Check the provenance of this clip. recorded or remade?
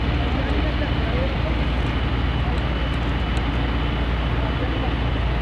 recorded